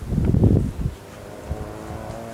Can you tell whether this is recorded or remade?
recorded